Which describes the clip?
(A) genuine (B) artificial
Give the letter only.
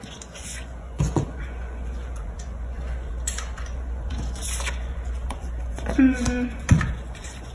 B